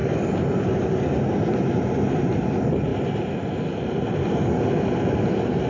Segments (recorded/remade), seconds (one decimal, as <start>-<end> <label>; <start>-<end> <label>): 0.0-5.7 recorded